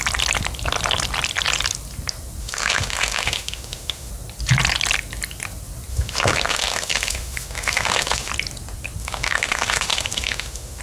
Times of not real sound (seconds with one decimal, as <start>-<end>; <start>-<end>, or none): 2.4-4.1; 5.9-8.3; 9.0-10.8